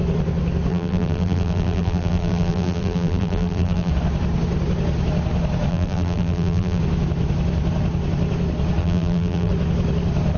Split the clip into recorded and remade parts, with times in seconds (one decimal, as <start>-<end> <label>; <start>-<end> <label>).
0.0-0.7 recorded; 0.7-3.9 remade; 3.9-5.7 recorded; 5.7-6.8 remade; 6.8-8.8 recorded; 8.8-9.5 remade; 9.5-10.4 recorded